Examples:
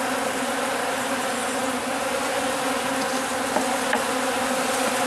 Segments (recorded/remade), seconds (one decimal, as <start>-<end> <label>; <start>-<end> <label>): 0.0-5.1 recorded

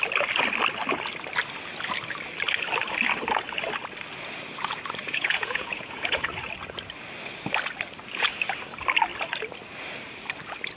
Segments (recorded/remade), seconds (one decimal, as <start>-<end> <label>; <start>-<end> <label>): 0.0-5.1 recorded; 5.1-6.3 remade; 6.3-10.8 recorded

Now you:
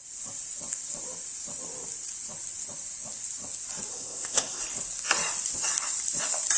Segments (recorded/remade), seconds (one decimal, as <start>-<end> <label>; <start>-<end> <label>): 0.0-3.9 recorded; 3.9-4.6 remade; 4.6-6.6 recorded

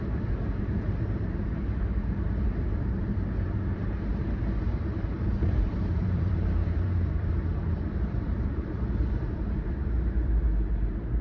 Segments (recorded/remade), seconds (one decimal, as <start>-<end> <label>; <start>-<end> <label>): 0.0-11.2 remade